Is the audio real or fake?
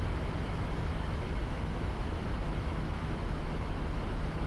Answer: fake